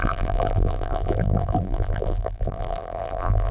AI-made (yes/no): yes